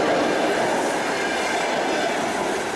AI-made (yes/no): no